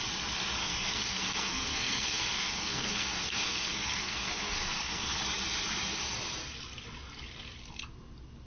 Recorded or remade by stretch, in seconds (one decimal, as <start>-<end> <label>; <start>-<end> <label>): 0.0-0.6 recorded; 0.6-5.2 remade; 5.2-8.5 recorded